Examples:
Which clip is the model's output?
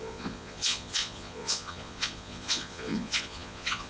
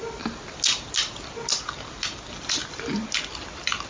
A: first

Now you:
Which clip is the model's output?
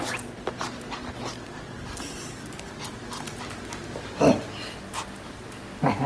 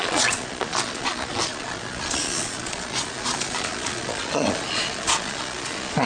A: second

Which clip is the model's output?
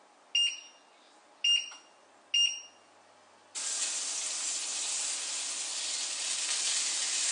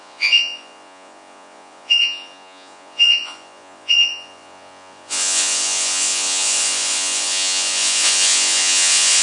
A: second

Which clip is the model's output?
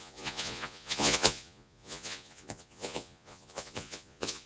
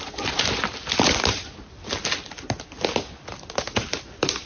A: first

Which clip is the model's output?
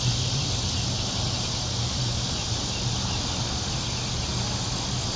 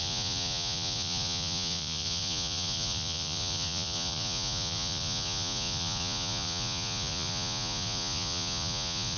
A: second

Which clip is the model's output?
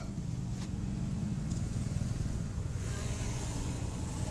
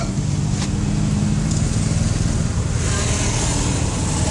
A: first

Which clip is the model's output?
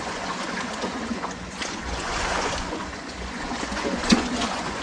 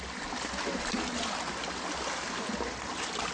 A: first